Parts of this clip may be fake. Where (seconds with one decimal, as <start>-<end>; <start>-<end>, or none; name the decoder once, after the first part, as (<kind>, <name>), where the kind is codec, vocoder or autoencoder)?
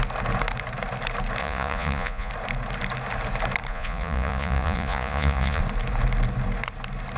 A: 1.4-2.3 (vocoder, Vocos); 3.7-5.6